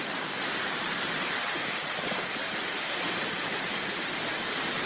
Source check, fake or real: real